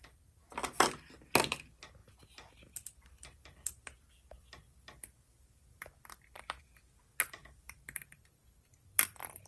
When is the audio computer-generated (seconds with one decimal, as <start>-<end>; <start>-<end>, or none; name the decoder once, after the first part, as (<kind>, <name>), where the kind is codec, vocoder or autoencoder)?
2.0-6.6 (vocoder, BigVGAN v2); 7.4-9.5